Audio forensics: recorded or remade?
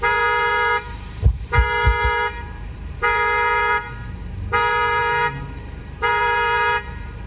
remade